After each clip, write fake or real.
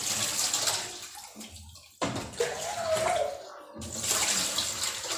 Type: real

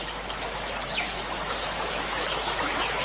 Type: fake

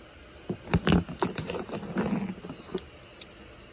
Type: real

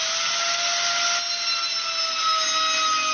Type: real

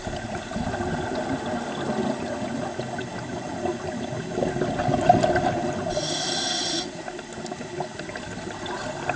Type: real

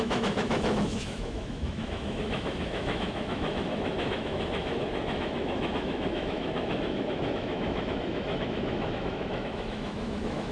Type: fake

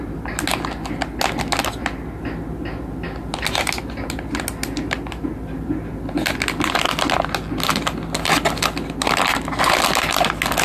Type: real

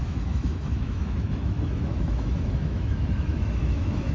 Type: fake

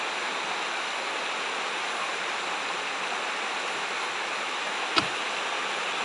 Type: real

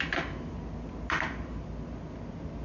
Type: real